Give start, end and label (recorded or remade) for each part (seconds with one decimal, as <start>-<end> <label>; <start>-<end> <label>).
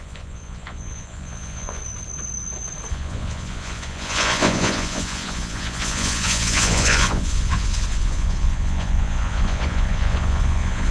0.0-1.8 remade; 1.8-2.9 recorded; 2.9-10.9 remade